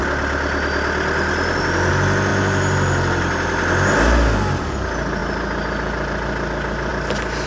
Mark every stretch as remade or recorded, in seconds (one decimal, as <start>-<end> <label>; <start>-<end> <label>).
0.0-7.5 recorded